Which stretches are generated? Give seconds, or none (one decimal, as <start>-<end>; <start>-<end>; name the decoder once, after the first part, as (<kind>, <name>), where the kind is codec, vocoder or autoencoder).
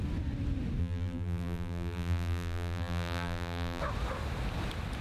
0.8-3.8 (vocoder, BigVGAN v2)